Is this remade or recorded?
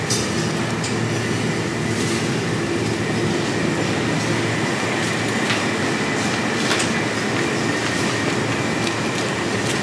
recorded